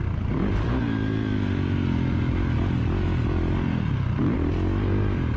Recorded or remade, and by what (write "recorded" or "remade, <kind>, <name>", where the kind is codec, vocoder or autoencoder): recorded